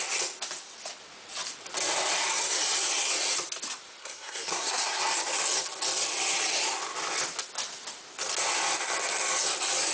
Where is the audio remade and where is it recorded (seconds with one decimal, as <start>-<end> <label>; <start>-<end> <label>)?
0.0-4.0 recorded; 4.0-5.0 remade; 5.0-9.9 recorded

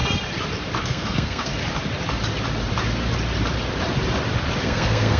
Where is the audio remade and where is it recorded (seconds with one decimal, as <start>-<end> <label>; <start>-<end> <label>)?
0.0-0.8 recorded; 0.8-1.5 remade; 1.5-4.6 recorded; 4.6-5.2 remade